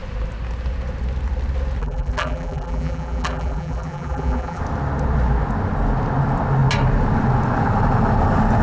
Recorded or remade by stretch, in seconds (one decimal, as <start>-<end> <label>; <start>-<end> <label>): 0.0-1.8 recorded; 1.8-4.6 remade; 4.6-8.6 recorded